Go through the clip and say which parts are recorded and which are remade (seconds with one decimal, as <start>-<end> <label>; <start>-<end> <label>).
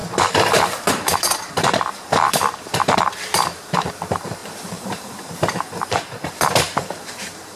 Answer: 0.0-7.6 remade